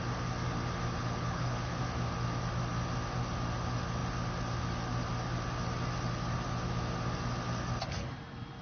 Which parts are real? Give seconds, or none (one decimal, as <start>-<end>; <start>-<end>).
0.0-1.0; 1.8-8.6